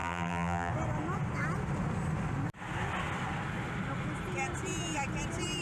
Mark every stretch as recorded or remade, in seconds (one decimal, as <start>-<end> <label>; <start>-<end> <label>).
0.0-0.7 remade; 0.7-5.6 recorded